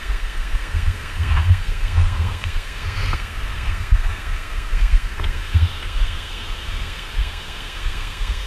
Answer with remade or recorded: remade